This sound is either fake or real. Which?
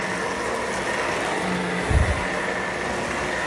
real